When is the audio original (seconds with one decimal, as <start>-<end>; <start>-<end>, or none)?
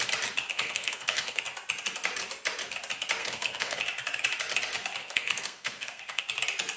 0.0-0.5; 1.4-3.2; 3.8-5.0; 6.2-6.8